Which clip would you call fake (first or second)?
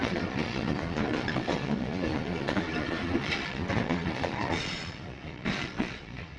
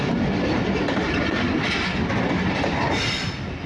first